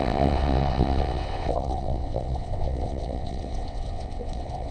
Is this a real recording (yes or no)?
no